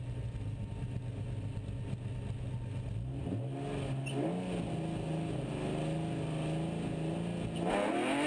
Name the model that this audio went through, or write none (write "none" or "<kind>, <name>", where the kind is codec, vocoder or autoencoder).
none